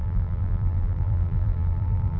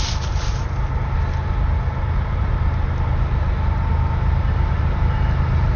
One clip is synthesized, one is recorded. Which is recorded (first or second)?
second